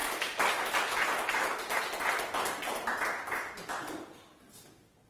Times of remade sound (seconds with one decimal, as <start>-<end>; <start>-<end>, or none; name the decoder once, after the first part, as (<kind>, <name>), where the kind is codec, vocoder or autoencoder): none